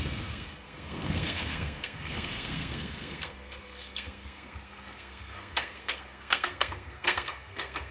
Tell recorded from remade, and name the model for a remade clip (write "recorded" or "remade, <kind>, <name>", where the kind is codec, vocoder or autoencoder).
remade, codec, SNAC